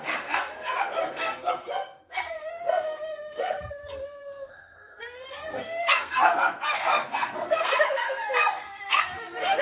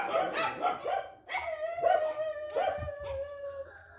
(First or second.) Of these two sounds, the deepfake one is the first